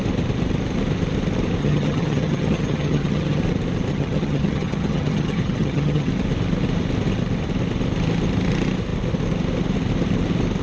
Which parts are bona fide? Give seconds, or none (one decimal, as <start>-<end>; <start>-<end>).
0.0-1.6; 3.4-3.9; 6.1-10.6